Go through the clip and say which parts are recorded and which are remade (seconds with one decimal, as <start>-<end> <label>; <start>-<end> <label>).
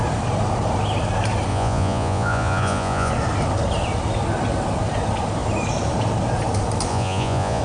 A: 0.0-1.5 recorded; 1.5-3.1 remade; 3.1-6.9 recorded; 6.9-7.6 remade